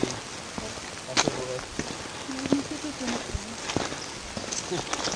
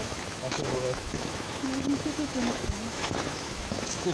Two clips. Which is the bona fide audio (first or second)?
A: first